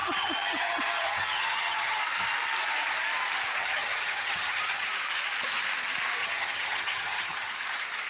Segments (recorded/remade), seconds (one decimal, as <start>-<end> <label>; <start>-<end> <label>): 0.0-2.0 remade; 2.0-3.6 recorded; 3.6-4.9 remade; 4.9-6.2 recorded; 6.2-7.5 remade; 7.5-8.1 recorded